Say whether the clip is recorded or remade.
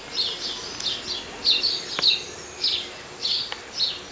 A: recorded